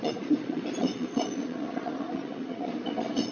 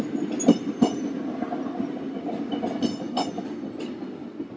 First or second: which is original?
second